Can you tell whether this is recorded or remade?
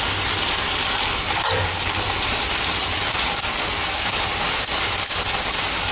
recorded